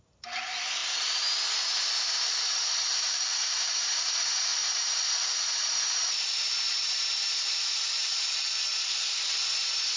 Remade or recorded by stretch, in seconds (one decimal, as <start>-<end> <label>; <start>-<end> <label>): 0.0-0.8 remade; 0.8-2.0 recorded; 2.0-10.0 remade